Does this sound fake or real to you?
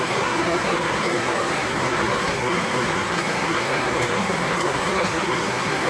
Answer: fake